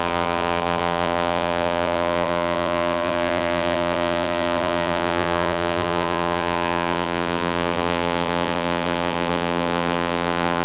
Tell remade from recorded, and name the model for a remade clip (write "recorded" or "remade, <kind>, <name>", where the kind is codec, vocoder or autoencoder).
remade, vocoder, BigVGAN v2